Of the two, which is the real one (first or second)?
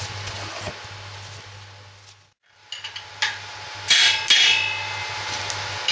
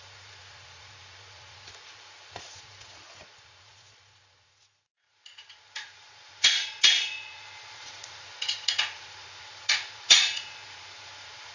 first